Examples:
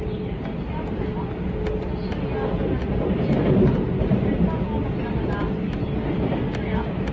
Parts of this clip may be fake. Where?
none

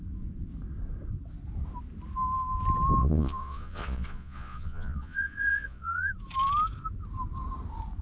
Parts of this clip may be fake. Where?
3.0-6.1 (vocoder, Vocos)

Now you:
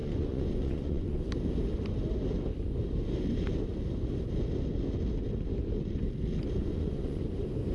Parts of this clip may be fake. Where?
0.0-1.2 (vocoder, Vocos); 6.6-7.2